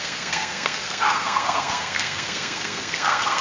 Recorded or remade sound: remade